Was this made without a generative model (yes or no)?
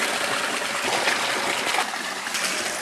yes